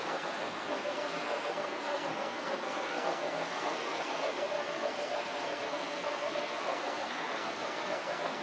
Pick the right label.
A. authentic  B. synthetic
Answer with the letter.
B